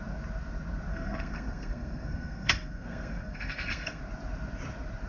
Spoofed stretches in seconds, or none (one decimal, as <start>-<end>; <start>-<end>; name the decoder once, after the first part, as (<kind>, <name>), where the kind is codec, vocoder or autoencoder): 0.9-4.0 (codec, SNAC)